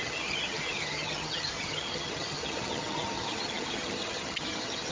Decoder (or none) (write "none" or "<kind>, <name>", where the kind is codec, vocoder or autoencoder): vocoder, HiFi-GAN